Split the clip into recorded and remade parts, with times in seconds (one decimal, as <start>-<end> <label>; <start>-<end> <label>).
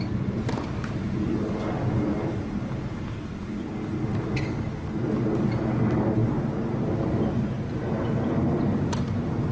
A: 0.0-9.5 recorded